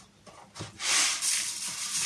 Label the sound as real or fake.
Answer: real